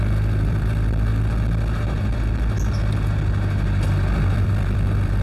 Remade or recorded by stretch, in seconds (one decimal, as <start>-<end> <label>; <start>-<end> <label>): 0.0-1.1 remade; 1.1-4.2 recorded; 4.2-5.2 remade